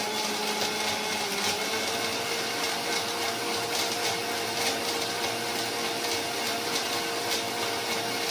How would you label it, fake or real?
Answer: real